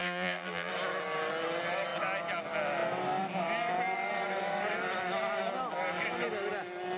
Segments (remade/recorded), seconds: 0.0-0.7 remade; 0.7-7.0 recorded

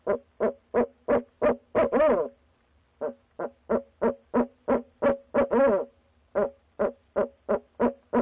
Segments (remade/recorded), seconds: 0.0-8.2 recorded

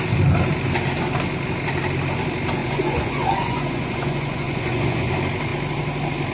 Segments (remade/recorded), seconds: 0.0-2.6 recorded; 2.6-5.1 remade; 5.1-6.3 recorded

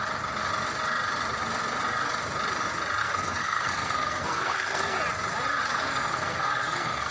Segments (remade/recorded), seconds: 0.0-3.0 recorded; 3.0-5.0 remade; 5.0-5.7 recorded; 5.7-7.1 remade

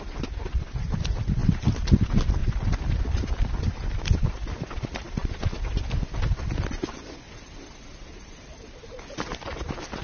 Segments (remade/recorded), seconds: 0.0-2.4 recorded; 2.4-3.6 remade; 3.6-10.0 recorded

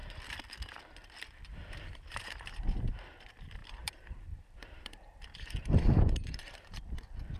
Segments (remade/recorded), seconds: 0.0-1.5 recorded; 1.5-2.9 remade; 2.9-3.6 recorded; 3.6-6.8 remade; 6.8-7.4 recorded

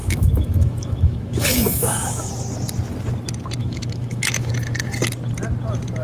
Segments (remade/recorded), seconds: 0.0-2.3 remade; 2.3-3.6 recorded; 3.6-4.5 remade; 4.5-6.0 recorded